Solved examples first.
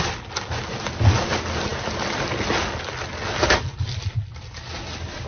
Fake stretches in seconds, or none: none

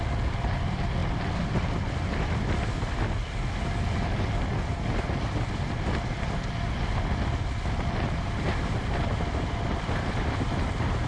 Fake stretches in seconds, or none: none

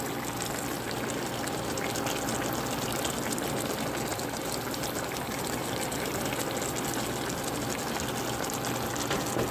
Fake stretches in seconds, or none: 4.1-6.3 (vocoder, BigVGAN v2)